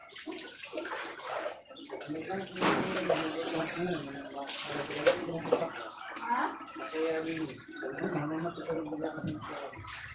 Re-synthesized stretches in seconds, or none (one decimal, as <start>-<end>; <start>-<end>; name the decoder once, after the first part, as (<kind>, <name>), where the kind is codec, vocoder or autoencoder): 3.4-3.9 (vocoder, BigVGAN v2); 7.3-8.1